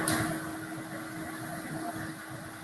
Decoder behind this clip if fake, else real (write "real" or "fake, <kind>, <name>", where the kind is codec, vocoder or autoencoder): real